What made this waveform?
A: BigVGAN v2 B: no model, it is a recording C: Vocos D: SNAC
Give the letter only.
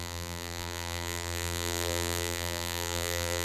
A